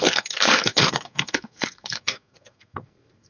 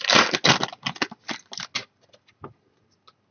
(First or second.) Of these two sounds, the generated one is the first